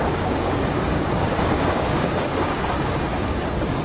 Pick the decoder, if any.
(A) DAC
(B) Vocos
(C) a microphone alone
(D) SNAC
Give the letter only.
A